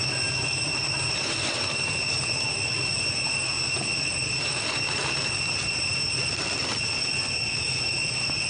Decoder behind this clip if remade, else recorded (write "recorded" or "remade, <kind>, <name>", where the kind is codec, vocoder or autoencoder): recorded